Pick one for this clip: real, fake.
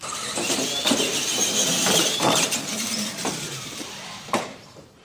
fake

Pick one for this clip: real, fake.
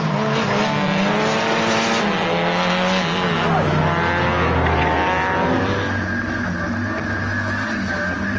real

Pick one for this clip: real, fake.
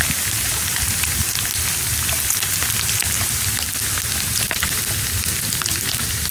real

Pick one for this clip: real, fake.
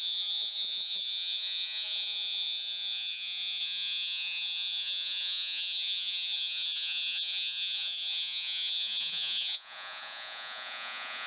fake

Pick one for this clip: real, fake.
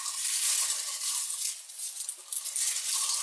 real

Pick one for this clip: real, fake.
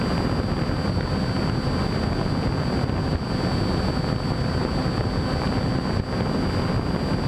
real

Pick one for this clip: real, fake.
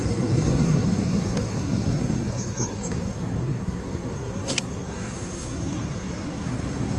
fake